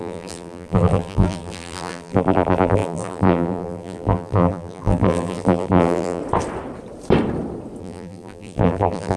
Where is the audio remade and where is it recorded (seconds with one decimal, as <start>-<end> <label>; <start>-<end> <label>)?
0.0-6.2 remade; 6.2-7.8 recorded; 7.8-9.2 remade